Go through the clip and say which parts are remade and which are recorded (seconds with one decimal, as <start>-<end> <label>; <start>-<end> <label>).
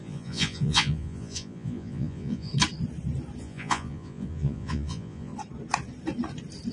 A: 0.0-2.5 remade; 2.5-3.4 recorded; 3.4-5.3 remade; 5.3-6.7 recorded